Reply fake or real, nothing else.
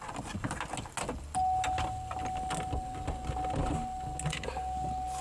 real